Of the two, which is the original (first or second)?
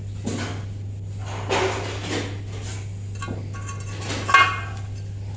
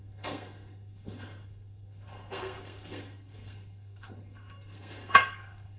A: first